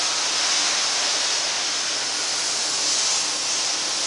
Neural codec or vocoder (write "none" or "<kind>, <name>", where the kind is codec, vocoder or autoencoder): none